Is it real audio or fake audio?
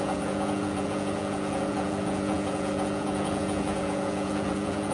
fake